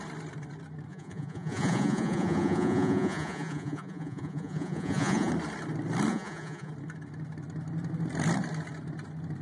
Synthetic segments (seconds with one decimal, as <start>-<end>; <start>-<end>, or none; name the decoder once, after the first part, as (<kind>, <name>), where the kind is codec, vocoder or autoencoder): 0.9-5.3 (vocoder, Vocos); 6.1-6.7